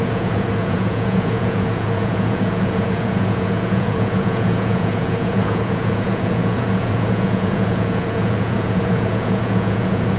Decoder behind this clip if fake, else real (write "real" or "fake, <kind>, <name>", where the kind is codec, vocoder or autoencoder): fake, vocoder, Vocos